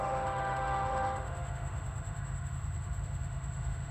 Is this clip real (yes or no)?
no